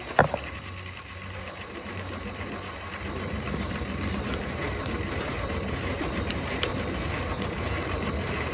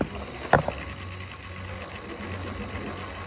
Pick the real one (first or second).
second